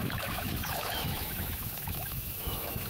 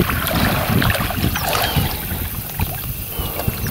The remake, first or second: first